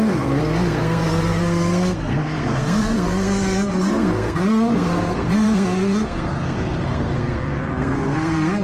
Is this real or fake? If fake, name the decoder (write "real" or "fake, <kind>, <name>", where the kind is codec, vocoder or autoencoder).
fake, codec, SNAC